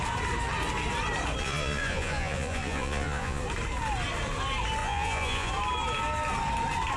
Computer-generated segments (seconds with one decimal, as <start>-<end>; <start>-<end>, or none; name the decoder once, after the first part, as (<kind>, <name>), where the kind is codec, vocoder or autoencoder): 1.4-3.4 (vocoder, Vocos); 4.8-5.5